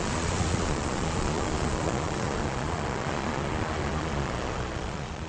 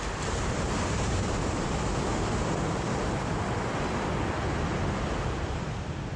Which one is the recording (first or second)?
second